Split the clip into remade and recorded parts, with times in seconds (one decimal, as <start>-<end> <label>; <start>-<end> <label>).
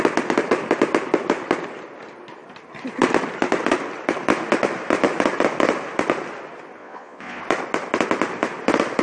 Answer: 0.0-6.8 recorded; 6.8-7.4 remade; 7.4-9.0 recorded